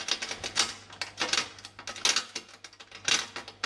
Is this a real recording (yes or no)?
yes